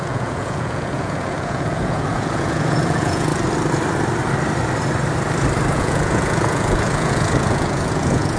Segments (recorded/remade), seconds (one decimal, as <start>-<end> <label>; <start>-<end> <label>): 0.0-3.3 remade; 3.3-5.7 recorded; 5.7-8.4 remade